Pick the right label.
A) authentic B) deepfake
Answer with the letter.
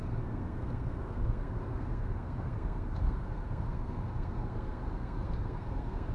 B